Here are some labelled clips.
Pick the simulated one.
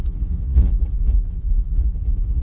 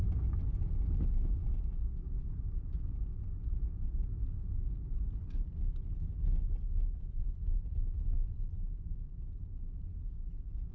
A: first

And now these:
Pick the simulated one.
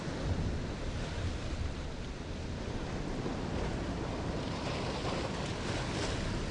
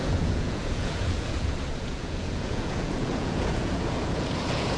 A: second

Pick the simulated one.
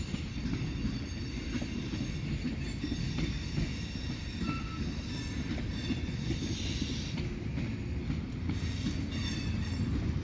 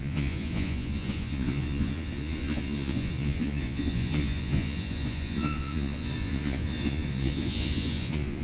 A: second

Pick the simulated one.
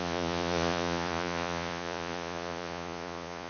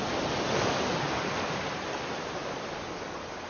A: first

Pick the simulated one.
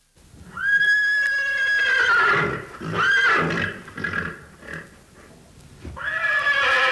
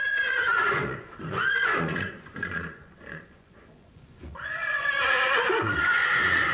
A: second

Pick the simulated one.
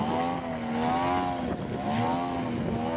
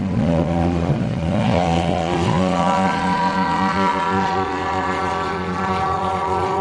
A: second